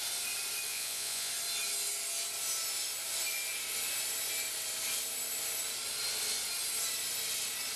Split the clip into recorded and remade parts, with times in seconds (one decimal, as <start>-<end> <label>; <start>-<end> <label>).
0.0-0.7 recorded; 0.7-1.3 remade; 1.3-7.8 recorded